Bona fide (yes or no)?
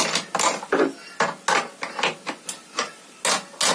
yes